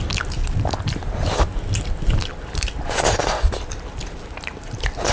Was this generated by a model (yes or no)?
no